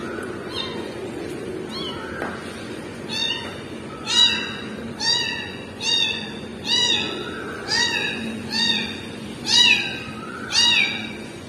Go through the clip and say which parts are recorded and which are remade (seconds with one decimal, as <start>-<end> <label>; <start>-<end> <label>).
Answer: 0.0-1.5 remade; 1.5-2.3 recorded; 2.3-11.5 remade